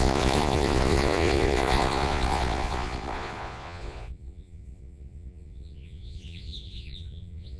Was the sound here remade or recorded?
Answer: remade